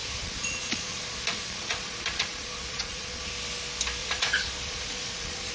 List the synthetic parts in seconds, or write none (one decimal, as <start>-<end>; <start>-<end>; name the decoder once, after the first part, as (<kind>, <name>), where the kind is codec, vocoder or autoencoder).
0.0-3.3 (vocoder, Vocos); 4.0-5.5